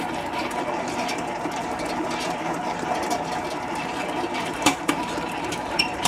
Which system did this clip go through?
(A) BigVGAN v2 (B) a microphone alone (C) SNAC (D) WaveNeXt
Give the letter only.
A